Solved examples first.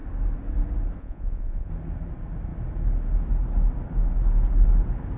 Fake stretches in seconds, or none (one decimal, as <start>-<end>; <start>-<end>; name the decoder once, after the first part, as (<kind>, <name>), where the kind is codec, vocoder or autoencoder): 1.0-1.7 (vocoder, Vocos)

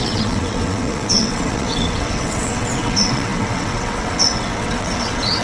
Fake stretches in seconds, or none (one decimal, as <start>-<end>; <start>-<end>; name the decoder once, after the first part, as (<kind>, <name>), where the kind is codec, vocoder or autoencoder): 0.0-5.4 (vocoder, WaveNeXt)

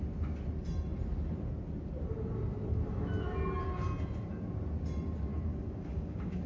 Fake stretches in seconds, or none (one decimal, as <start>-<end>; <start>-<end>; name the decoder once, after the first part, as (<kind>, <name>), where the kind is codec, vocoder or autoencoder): 5.3-6.5 (codec, DAC)

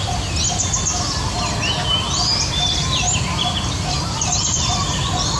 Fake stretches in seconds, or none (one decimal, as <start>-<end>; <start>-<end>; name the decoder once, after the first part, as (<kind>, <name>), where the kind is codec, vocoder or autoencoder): none